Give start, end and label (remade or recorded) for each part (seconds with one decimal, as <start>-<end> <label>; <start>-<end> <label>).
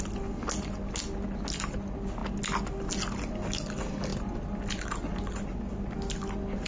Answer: 0.0-6.7 recorded